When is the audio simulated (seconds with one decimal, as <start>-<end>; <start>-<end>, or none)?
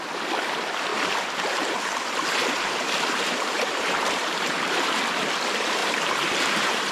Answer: 0.9-5.0; 5.8-6.9